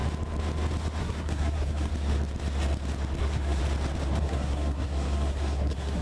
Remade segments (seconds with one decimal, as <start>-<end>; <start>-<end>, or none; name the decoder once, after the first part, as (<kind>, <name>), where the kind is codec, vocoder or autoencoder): 1.0-1.9 (codec, SNAC); 3.2-3.6; 4.2-6.0